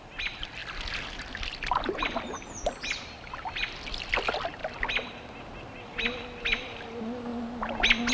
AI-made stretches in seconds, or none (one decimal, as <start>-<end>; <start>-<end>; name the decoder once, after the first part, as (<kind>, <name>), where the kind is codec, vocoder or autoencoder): none